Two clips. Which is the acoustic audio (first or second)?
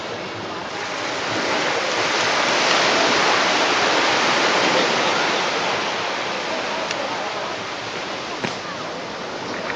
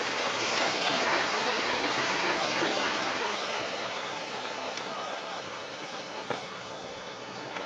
first